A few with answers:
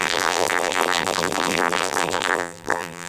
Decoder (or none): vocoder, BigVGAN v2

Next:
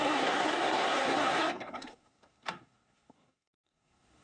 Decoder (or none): codec, SNAC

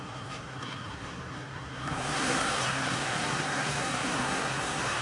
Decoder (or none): codec, SNAC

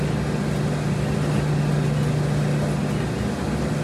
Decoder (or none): none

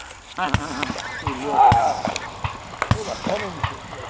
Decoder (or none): none